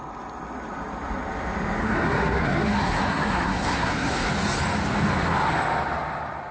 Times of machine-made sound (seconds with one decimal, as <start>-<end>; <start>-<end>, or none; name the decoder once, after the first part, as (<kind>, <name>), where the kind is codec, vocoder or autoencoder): 1.8-4.3 (codec, SNAC)